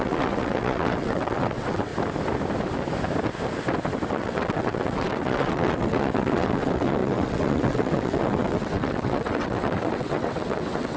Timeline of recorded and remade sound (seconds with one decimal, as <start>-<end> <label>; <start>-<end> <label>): 0.0-1.9 remade; 1.9-4.1 recorded; 4.1-11.0 remade